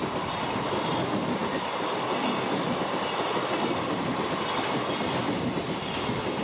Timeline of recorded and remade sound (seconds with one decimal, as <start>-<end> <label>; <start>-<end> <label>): 0.0-6.4 recorded